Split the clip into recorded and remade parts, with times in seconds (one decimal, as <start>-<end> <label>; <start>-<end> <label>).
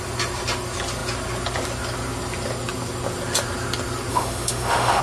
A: 0.0-4.1 recorded; 4.1-5.0 remade